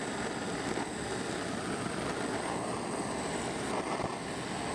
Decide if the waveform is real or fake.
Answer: real